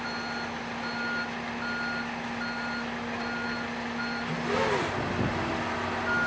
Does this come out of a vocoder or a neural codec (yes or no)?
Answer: no